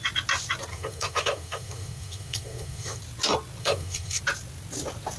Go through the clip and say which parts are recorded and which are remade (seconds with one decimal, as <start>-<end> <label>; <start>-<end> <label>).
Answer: 0.0-0.7 recorded; 0.7-3.0 remade; 3.0-3.6 recorded; 3.6-4.2 remade; 4.2-5.2 recorded